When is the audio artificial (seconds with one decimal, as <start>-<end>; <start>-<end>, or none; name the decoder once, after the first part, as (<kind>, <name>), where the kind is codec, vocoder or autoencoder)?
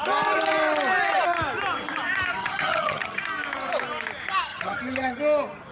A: 2.4-3.2 (vocoder, HiFi-GAN); 4.5-5.2